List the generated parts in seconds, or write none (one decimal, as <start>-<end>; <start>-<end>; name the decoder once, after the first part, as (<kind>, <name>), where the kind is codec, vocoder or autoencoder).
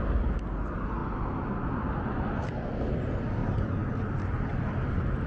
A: 3.4-3.9 (vocoder, BigVGAN v2)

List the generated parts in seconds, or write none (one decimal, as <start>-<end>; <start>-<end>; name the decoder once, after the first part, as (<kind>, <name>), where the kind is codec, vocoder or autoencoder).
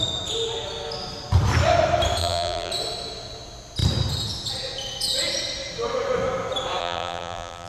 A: 2.2-2.7 (vocoder, BigVGAN v2); 6.8-7.7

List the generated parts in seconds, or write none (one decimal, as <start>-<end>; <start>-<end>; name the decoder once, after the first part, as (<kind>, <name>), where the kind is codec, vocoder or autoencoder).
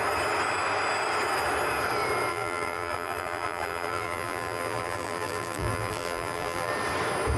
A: 2.3-6.7 (vocoder, BigVGAN v2)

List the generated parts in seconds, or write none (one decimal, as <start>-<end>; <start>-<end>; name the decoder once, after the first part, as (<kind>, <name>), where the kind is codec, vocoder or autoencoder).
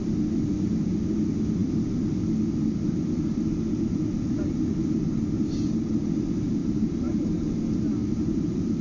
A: 6.6-7.6 (vocoder, BigVGAN v2); 8.0-8.8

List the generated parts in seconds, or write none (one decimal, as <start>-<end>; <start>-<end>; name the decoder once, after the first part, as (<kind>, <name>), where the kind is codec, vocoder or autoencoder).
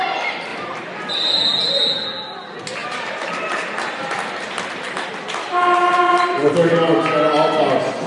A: 0.5-1.1 (vocoder, BigVGAN v2); 2.8-5.2; 5.9-6.5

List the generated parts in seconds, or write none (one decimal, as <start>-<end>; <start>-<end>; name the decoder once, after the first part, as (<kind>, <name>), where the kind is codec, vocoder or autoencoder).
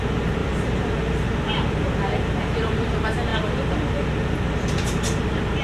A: 0.4-2.9 (vocoder, BigVGAN v2); 3.3-4.1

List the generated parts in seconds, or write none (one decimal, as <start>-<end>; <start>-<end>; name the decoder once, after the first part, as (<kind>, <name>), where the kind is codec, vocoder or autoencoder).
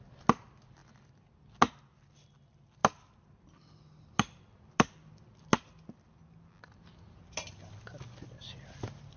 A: 0.0-0.8 (vocoder, BigVGAN v2); 1.7-5.5; 6.6-9.2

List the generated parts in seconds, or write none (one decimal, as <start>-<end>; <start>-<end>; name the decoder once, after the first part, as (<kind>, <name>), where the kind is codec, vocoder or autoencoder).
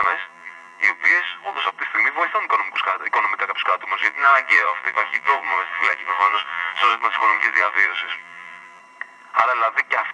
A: 0.0-1.7 (vocoder, BigVGAN v2); 4.0-8.8